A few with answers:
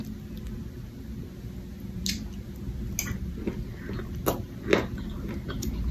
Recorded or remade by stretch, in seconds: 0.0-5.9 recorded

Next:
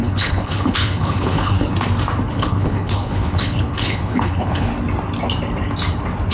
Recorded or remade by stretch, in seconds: 0.0-1.7 remade; 1.7-2.3 recorded; 2.3-4.7 remade; 4.7-6.3 recorded